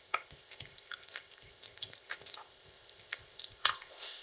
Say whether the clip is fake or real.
fake